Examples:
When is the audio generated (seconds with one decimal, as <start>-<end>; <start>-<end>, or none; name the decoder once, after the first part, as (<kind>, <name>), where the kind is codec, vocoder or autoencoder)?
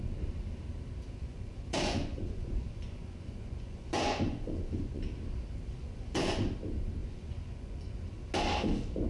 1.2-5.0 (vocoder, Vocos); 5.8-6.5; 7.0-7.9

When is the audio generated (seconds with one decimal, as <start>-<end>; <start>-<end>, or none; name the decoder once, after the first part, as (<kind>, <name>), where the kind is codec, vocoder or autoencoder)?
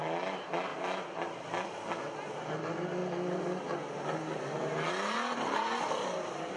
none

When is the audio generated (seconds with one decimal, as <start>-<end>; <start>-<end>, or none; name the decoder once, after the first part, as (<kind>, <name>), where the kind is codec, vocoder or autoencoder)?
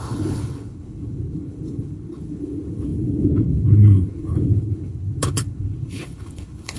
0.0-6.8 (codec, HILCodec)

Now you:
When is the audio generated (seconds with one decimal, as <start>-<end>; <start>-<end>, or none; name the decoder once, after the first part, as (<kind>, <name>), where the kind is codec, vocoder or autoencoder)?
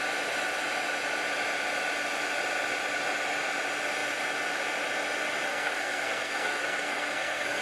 5.5-7.6 (codec, SNAC)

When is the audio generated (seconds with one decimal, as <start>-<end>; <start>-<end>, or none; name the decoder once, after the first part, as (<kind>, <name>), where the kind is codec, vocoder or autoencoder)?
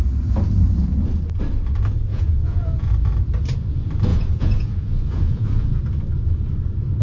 2.1-2.9 (vocoder, Vocos); 4.1-5.8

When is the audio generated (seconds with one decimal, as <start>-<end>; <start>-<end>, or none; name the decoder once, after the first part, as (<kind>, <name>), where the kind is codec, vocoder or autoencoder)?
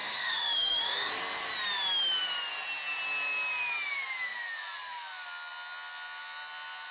0.0-1.1 (autoencoder, DAC-VAE)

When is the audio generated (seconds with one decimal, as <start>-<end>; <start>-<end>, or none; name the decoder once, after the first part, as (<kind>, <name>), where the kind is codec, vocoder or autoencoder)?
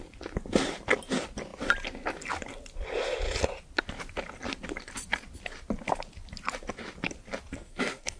7.5-8.2 (codec, SNAC)